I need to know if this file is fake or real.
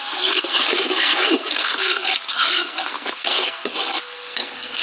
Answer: fake